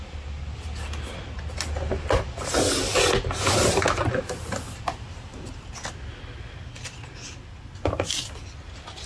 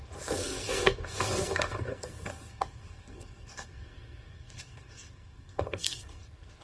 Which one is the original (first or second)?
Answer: first